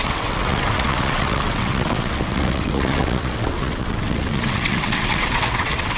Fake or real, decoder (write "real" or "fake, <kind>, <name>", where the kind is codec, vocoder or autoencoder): fake, vocoder, WaveNeXt